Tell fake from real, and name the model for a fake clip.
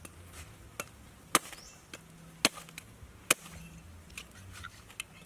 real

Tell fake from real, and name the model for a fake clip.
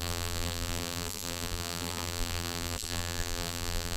fake, vocoder, BigVGAN v2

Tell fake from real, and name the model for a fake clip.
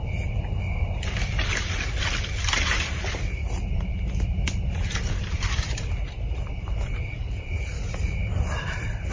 real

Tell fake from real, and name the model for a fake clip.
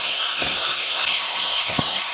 fake, codec, SNAC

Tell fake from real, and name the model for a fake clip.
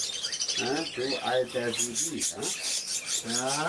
real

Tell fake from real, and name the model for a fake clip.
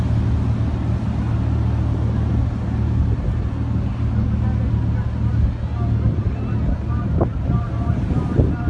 real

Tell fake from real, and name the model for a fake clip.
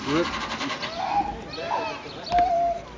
real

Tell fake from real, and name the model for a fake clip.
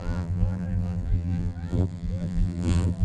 fake, vocoder, BigVGAN v2